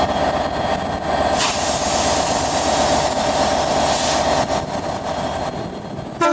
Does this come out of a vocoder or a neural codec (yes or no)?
no